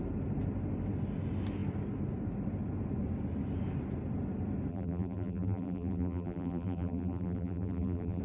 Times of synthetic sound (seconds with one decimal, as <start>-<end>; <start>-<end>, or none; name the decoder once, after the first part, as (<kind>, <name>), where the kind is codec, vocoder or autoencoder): 4.7-8.2 (vocoder, BigVGAN v2)